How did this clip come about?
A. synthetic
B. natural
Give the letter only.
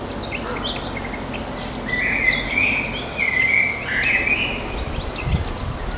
B